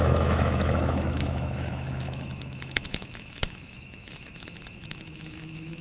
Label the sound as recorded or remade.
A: remade